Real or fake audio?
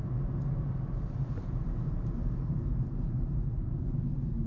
fake